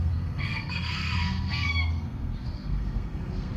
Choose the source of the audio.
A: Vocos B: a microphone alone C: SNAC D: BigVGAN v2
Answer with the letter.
C